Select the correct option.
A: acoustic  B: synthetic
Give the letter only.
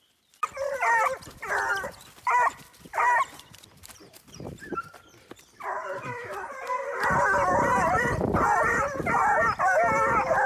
B